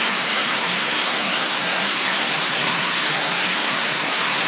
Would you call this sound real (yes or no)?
no